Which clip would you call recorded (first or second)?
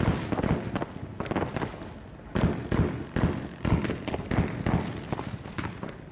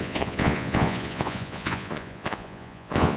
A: first